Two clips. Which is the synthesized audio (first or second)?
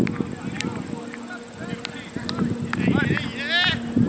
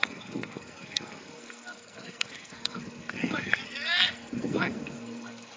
second